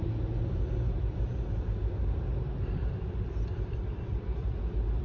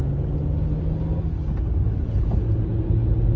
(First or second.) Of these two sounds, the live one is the second